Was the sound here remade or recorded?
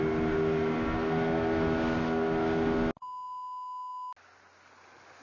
recorded